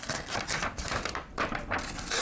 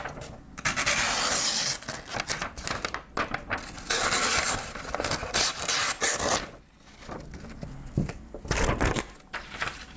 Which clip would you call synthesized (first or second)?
first